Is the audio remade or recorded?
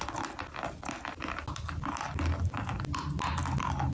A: recorded